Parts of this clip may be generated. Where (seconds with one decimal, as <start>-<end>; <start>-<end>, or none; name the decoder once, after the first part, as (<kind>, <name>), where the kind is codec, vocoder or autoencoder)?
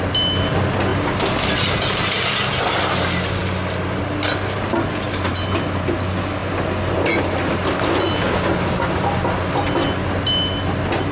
none